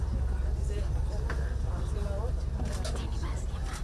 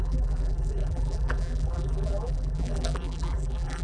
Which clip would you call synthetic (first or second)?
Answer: second